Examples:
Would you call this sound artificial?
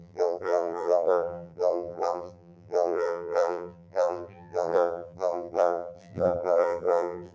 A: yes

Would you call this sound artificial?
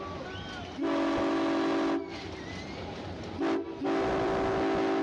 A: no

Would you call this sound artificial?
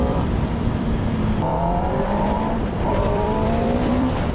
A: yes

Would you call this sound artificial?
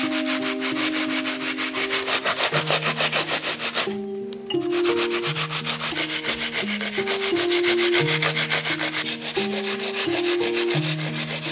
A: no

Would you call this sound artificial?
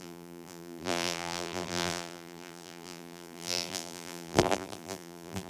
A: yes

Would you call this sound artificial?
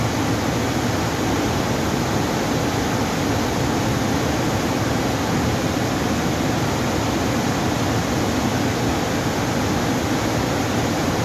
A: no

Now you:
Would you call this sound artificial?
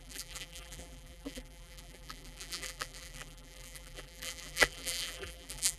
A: yes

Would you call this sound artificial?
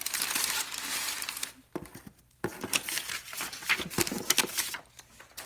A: yes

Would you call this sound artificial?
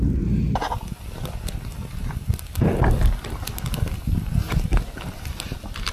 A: no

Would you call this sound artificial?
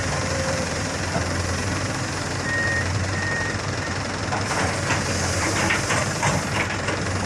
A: yes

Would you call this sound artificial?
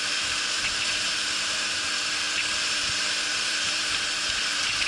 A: yes